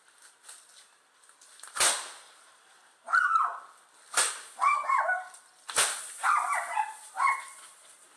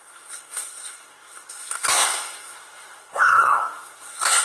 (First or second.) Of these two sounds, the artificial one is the second